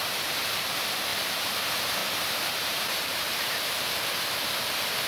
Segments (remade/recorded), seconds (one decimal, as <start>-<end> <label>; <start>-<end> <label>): 0.0-1.1 recorded; 1.1-1.6 remade; 1.6-2.0 recorded; 2.0-4.0 remade; 4.0-5.1 recorded